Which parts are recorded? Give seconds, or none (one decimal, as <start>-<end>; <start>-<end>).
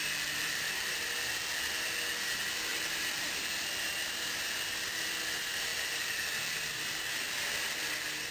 0.9-2.7; 3.5-5.7; 6.8-8.3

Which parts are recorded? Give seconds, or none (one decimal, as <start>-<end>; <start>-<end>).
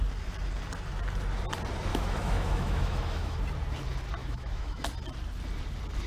0.0-1.9; 3.4-4.2; 4.8-6.1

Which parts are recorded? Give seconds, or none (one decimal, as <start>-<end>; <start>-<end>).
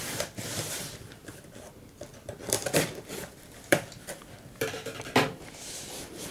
0.0-1.2; 1.7-2.1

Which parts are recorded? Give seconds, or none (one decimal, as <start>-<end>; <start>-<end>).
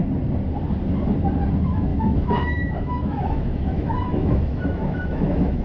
0.0-1.9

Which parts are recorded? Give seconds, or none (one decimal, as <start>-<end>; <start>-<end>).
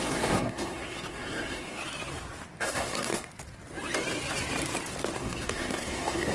1.8-2.6; 3.3-5.2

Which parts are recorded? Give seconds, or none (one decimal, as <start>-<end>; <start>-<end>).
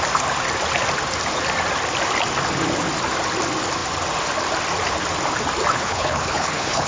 0.0-5.7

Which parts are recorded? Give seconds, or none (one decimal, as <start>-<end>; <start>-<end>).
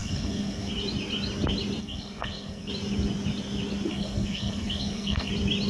0.7-1.8; 2.7-3.9; 5.3-5.7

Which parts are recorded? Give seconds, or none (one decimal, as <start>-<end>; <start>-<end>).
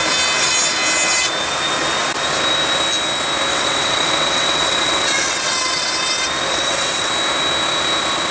0.0-3.5; 5.9-6.5; 7.1-8.3